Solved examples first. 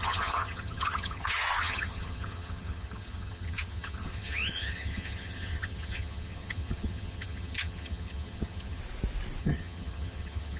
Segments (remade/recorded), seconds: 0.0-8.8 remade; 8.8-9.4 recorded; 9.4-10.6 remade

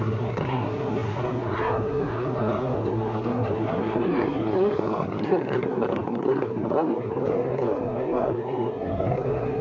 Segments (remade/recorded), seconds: 0.0-9.6 remade

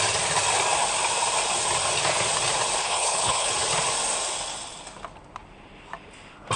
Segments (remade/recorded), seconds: 0.0-2.8 recorded; 2.8-3.5 remade; 3.5-6.6 recorded

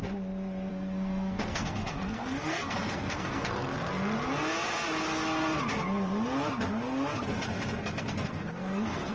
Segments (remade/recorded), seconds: 0.0-0.7 recorded; 0.7-3.7 remade; 3.7-8.0 recorded; 8.0-9.1 remade